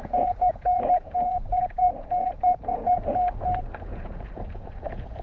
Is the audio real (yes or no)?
no